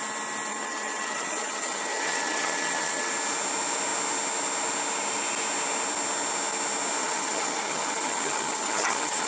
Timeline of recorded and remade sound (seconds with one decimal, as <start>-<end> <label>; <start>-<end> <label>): 0.0-0.5 recorded; 0.5-3.1 remade; 3.1-7.0 recorded; 7.0-9.3 remade